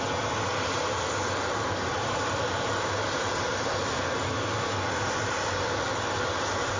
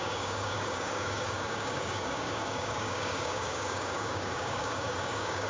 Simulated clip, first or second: second